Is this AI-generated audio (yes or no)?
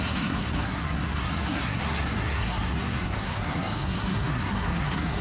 yes